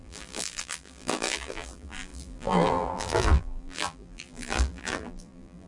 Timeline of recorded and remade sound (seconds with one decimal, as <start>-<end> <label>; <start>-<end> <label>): 0.0-5.7 remade